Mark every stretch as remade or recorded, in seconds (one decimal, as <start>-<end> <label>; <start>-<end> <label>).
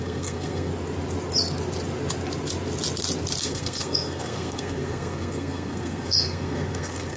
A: 0.0-0.7 remade; 0.7-3.4 recorded; 3.4-7.2 remade